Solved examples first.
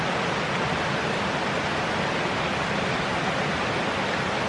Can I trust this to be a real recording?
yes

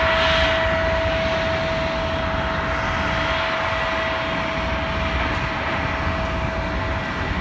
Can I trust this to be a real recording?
yes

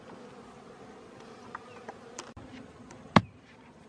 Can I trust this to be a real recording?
yes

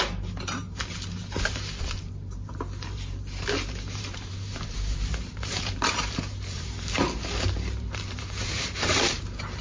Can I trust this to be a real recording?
no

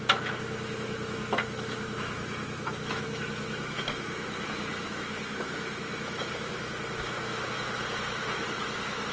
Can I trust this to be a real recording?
no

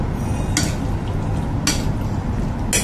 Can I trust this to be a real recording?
yes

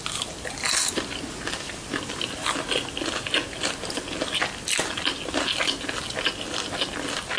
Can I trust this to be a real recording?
yes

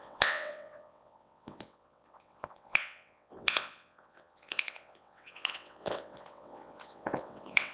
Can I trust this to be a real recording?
no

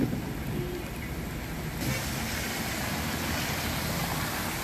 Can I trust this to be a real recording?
yes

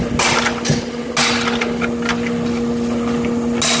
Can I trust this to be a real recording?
yes